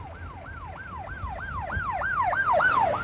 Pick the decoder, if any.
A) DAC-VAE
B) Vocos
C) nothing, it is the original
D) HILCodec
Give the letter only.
C